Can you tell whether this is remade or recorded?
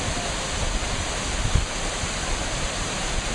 recorded